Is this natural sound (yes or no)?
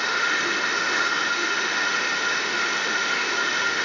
no